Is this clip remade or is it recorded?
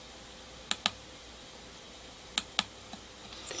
recorded